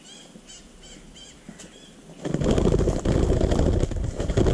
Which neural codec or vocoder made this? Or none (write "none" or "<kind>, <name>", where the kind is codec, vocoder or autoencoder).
none